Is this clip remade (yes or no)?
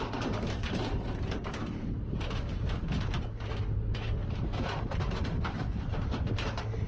yes